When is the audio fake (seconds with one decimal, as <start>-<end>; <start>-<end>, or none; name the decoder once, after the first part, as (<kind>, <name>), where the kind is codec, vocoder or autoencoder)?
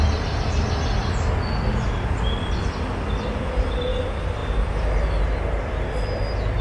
none